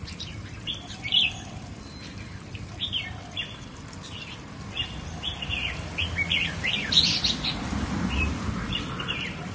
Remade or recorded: remade